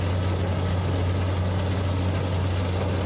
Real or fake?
real